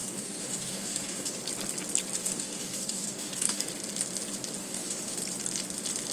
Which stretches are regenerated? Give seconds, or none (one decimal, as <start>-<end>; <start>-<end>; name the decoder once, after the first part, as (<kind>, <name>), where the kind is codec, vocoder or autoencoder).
0.0-1.4 (codec, DAC); 2.2-3.7; 4.6-5.2